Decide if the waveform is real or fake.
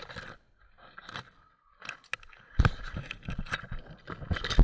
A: real